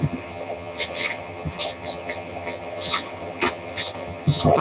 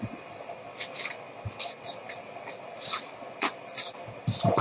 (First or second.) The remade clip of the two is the first